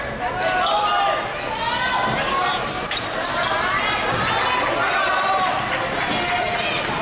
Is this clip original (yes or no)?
yes